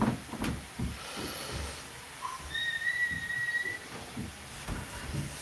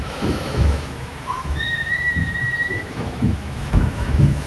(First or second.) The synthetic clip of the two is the second